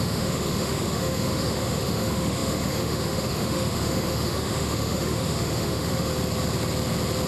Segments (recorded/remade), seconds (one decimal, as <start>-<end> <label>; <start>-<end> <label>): 0.0-6.1 remade; 6.1-7.3 recorded